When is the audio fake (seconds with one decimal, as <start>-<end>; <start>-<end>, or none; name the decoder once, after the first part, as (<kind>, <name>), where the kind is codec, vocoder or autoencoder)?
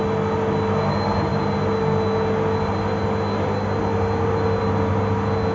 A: none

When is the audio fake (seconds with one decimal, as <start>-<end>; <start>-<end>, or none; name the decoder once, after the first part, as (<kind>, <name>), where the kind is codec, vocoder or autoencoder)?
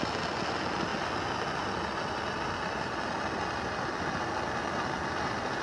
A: none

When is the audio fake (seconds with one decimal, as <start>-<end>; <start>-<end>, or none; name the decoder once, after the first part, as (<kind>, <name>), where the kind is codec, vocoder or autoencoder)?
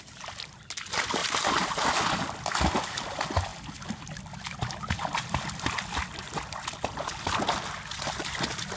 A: none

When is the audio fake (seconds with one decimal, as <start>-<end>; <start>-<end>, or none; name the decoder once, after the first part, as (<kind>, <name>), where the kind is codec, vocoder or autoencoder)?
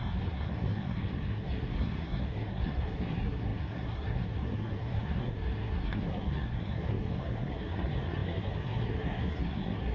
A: 0.0-9.9 (codec, SNAC)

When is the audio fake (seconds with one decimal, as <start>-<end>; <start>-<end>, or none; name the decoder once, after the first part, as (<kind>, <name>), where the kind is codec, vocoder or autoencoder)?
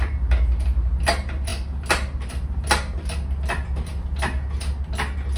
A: none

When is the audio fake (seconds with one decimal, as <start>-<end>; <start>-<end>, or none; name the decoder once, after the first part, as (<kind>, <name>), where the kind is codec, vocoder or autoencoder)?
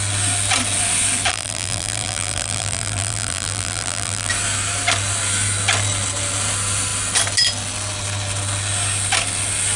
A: 1.3-4.3 (vocoder, BigVGAN v2)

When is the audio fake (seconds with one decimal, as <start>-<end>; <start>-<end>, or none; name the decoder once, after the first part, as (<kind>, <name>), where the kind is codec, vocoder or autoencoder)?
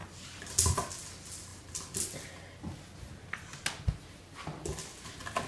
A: none